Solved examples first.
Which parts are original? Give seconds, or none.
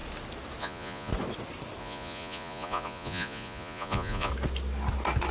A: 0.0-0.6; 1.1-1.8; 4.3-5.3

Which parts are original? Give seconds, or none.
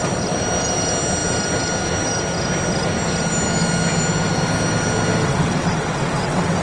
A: 0.0-5.2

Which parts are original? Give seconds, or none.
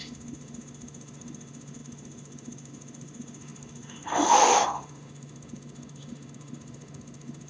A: none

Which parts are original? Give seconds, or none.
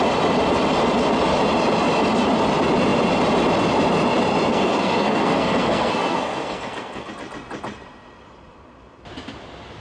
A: 0.0-4.5; 7.1-9.8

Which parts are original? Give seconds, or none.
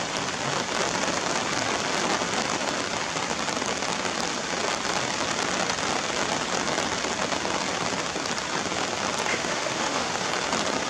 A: 0.0-9.3; 10.3-10.9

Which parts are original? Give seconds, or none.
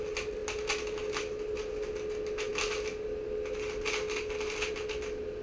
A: 0.0-5.4